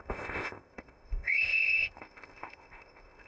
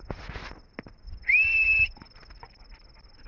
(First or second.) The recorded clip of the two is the second